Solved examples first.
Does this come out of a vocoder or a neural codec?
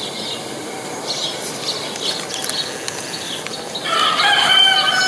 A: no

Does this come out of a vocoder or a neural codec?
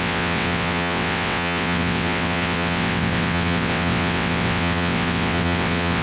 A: yes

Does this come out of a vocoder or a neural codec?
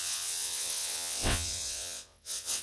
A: yes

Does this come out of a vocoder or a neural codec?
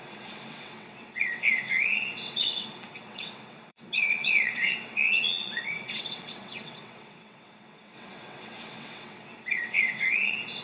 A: yes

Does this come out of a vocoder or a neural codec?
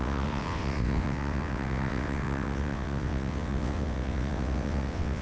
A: yes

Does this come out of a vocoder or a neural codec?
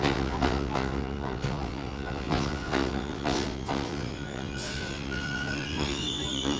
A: yes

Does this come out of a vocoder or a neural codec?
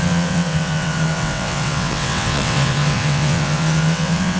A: yes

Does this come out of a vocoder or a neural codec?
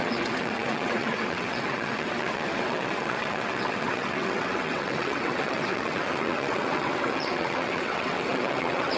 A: yes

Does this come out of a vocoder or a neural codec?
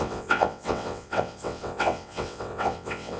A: yes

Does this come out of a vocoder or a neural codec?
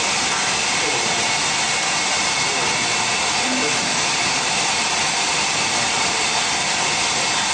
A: no